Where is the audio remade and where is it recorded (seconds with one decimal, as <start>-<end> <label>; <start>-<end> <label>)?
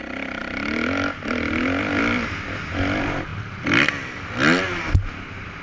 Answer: 0.0-5.6 recorded